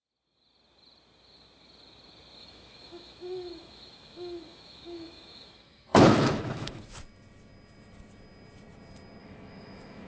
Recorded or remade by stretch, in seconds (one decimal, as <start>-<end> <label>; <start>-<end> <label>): 0.0-2.4 recorded; 2.4-6.8 remade; 6.8-9.2 recorded; 9.2-10.1 remade